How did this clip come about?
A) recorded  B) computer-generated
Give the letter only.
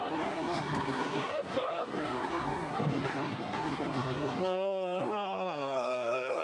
B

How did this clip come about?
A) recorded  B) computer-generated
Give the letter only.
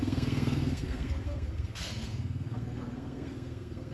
B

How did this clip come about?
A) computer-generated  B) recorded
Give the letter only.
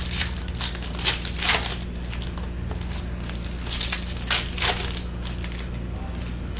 B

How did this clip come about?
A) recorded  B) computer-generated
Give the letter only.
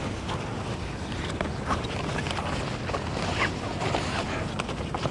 A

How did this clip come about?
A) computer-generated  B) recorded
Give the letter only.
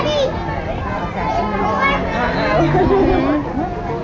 B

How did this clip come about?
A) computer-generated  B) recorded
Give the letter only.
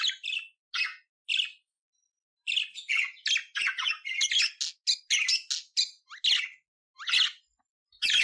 B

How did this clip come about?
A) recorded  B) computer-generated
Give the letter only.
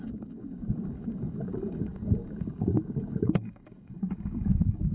B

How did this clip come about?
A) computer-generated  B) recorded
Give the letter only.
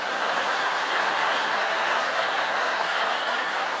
A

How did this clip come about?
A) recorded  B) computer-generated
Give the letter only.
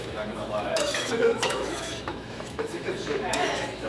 B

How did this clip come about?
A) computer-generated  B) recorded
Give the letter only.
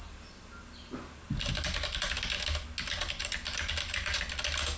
B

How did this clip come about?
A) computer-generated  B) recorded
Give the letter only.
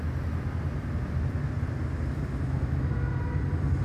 B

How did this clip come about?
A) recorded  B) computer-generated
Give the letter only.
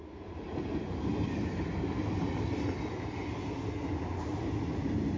A